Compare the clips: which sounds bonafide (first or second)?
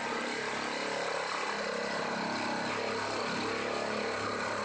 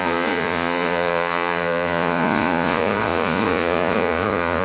first